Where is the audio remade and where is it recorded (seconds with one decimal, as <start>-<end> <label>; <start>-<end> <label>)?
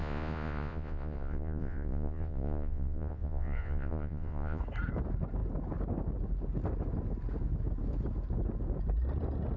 0.0-4.6 remade; 4.6-9.6 recorded